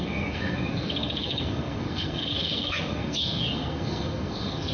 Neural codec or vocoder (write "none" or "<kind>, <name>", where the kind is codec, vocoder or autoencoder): codec, SNAC